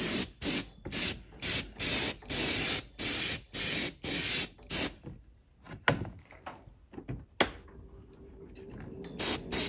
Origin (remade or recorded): recorded